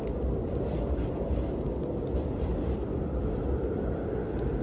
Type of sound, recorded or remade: recorded